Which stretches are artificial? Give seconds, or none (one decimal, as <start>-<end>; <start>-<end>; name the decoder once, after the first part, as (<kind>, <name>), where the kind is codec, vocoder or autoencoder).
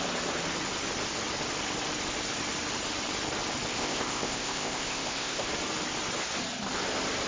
3.7-5.5 (codec, ZipCodec)